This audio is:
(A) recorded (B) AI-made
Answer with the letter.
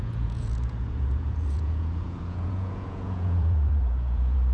B